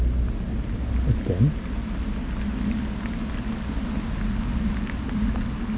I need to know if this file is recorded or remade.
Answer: recorded